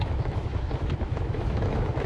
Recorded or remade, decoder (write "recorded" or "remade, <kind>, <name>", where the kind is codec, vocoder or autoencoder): remade, autoencoder, DAC-VAE